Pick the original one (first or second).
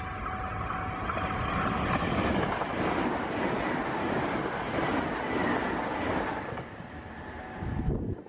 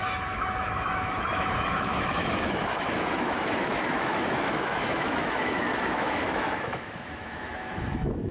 first